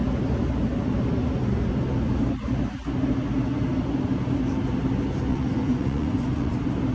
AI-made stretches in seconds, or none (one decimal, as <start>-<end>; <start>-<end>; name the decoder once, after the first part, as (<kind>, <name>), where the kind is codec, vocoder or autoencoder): 5.3-6.5 (vocoder, Vocos)